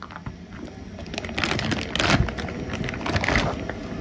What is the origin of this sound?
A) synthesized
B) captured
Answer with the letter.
B